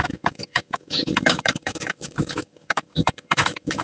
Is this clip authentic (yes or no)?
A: no